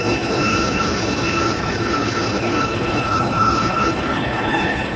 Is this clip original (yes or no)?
no